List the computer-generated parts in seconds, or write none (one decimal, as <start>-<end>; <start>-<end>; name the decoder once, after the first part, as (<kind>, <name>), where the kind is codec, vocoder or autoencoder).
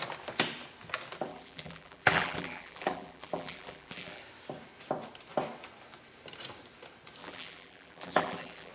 1.3-4.2 (vocoder, BigVGAN v2); 7.2-8.7